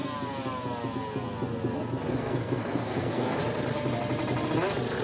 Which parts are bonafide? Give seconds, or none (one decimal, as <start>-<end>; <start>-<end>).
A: 0.0-2.1; 3.4-5.0